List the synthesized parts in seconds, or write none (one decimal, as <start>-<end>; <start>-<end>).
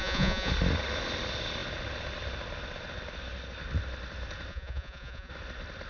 0.0-0.5; 4.5-5.3